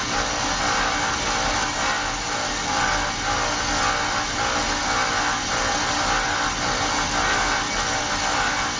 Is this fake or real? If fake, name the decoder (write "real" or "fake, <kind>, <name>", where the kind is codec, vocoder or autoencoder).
real